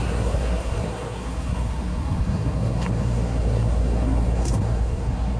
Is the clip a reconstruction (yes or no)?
yes